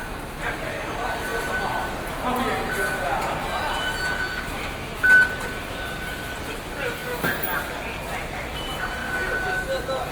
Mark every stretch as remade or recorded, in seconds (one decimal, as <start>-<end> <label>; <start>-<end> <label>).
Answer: 0.0-10.1 recorded